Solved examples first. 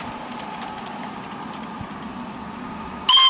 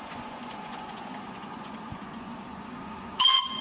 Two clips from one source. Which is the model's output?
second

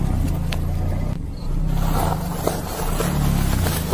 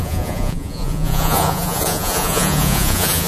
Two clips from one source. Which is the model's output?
second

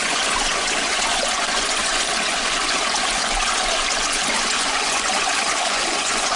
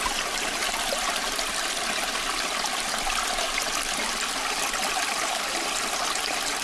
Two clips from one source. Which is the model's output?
first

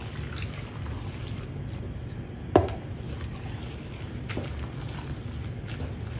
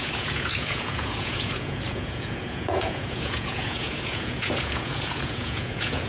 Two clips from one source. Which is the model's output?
second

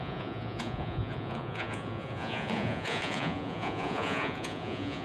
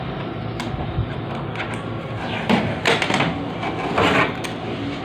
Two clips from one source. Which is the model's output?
first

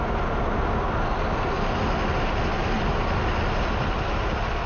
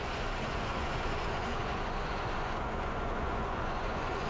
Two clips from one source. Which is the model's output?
second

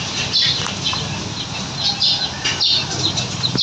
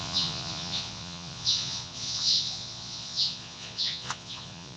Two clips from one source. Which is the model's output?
second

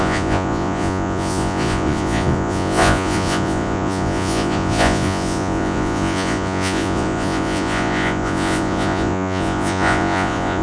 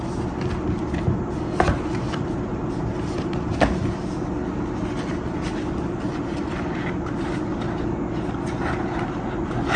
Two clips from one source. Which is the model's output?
first